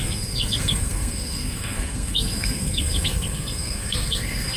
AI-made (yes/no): yes